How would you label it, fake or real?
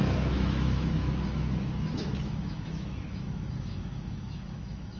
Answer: fake